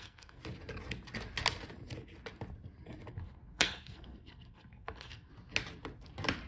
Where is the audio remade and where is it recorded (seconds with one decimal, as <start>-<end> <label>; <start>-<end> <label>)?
0.0-0.4 remade; 0.4-3.1 recorded; 3.1-5.3 remade; 5.3-6.5 recorded